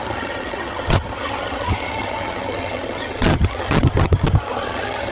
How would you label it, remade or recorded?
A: remade